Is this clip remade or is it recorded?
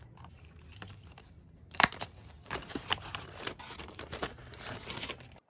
remade